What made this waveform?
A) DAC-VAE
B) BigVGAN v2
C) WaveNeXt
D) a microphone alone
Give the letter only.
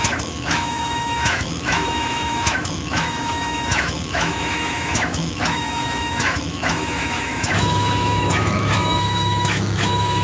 A